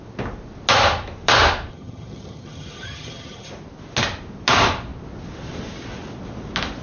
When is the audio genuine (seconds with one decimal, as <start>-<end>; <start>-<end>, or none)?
0.0-1.7; 3.5-6.8